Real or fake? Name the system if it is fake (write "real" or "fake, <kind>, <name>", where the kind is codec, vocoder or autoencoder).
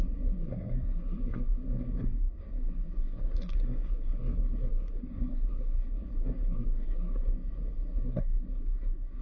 fake, codec, SNAC